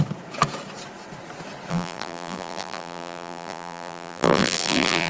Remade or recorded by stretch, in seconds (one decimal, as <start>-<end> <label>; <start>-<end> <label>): 0.0-1.7 recorded; 1.7-5.1 remade